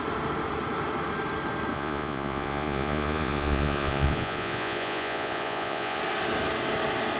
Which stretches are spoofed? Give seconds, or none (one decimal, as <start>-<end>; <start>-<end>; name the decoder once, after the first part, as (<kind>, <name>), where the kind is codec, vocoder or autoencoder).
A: 1.7-6.0 (vocoder, Vocos)